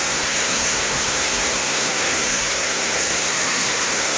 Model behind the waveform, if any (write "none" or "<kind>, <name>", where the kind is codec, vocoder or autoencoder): codec, SNAC